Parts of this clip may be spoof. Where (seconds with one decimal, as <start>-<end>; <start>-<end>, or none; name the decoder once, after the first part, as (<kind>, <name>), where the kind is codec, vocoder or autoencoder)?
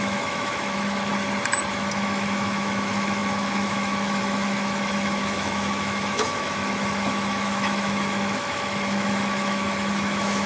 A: 0.0-1.1 (autoencoder, DAC-VAE); 1.7-10.5